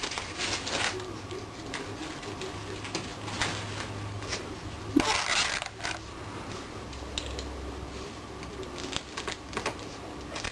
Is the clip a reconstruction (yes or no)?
no